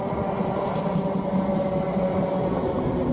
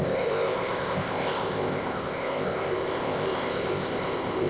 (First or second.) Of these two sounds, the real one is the first